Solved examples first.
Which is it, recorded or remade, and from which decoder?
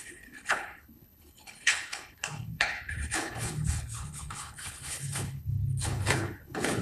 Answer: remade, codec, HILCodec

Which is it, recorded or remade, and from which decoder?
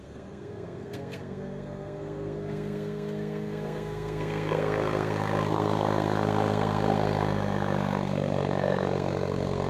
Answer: remade, codec, SNAC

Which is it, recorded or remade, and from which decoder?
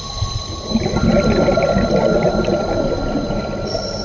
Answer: recorded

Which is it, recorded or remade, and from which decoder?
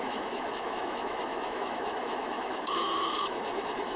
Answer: remade, autoencoder, DAC-VAE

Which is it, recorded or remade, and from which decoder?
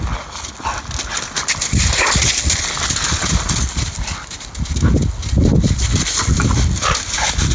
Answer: recorded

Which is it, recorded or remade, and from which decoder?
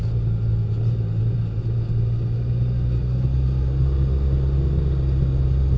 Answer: recorded